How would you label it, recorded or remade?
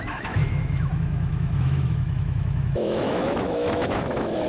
remade